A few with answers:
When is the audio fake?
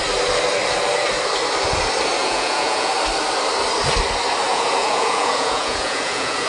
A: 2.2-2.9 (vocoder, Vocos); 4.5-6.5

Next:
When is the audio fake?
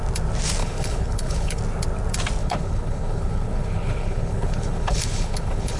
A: 0.6-1.6 (codec, HILCodec); 2.4-5.8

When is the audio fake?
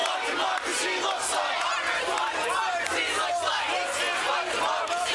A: 0.0-0.6 (vocoder, BigVGAN v2)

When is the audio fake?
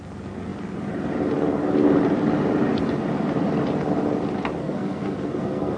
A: 4.6-5.8 (codec, SNAC)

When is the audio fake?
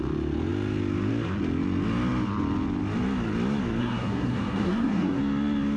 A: 3.8-5.2 (codec, SNAC)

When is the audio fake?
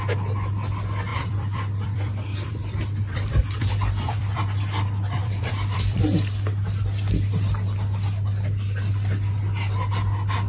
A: 1.1-4.4 (vocoder, BigVGAN v2); 5.2-6.2